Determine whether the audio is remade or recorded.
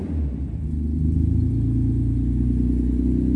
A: recorded